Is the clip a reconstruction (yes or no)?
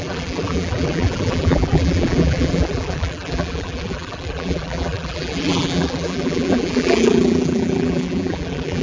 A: yes